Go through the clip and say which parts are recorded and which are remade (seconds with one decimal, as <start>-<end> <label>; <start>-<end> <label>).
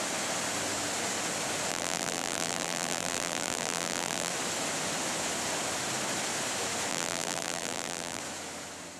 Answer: 0.0-1.7 recorded; 1.7-4.3 remade; 4.3-6.9 recorded; 6.9-8.2 remade; 8.2-9.0 recorded